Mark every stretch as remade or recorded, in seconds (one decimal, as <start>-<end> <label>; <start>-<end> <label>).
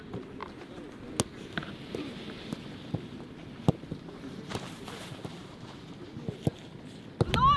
0.0-0.4 remade; 0.4-1.4 recorded; 1.4-6.1 remade; 6.1-7.6 recorded